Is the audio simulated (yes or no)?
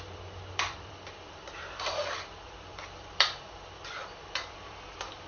yes